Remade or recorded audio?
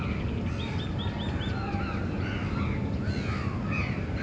recorded